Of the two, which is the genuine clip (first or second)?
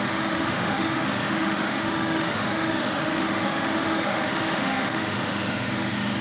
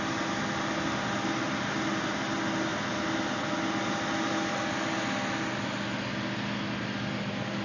second